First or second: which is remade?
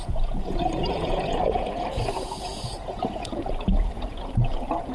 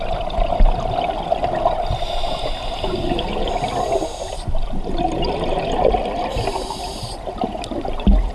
first